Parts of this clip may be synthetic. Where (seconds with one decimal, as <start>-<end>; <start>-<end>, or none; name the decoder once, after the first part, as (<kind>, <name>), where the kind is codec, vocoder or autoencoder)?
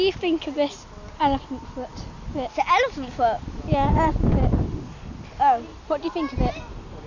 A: none